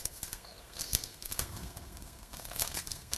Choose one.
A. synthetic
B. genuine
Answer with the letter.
A